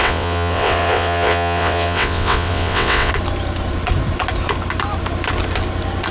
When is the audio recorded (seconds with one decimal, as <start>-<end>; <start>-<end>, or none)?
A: 3.1-6.1